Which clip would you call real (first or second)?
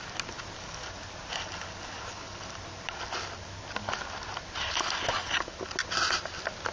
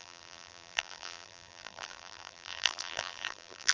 first